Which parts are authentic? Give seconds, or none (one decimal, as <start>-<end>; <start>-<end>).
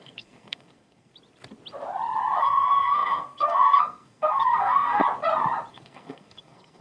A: 1.1-2.4; 5.0-5.7